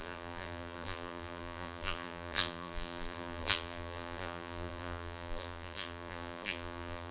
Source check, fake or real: fake